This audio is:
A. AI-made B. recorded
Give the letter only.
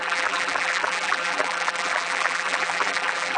A